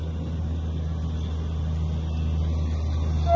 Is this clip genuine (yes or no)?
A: yes